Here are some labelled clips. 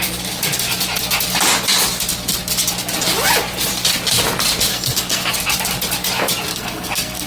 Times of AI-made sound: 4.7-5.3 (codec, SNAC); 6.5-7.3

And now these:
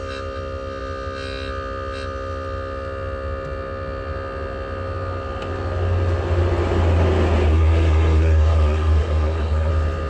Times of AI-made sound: 7.5-9.7 (codec, SNAC)